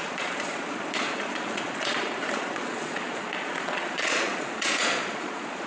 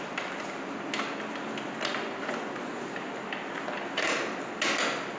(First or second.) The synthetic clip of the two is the first